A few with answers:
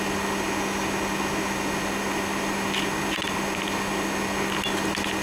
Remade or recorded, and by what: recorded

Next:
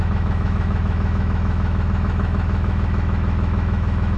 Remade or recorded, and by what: remade, autoencoder, DAC-VAE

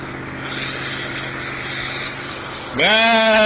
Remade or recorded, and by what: recorded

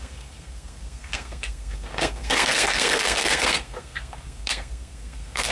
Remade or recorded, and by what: remade, codec, SNAC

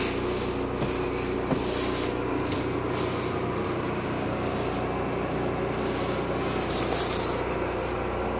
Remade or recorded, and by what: recorded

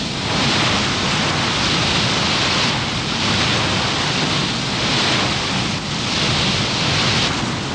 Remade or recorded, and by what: recorded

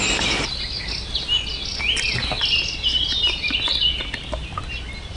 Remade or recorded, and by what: recorded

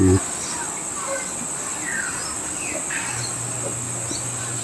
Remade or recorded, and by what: recorded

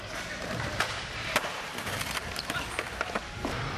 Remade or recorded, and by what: recorded